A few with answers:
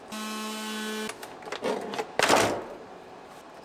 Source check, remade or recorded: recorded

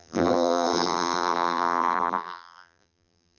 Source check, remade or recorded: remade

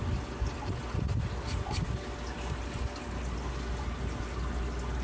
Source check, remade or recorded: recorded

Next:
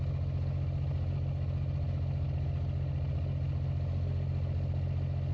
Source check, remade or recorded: recorded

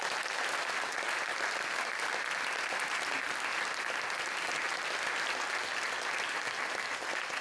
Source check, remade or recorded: recorded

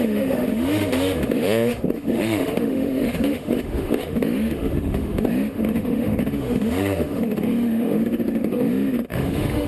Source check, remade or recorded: remade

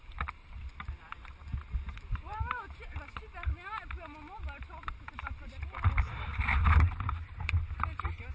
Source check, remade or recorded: recorded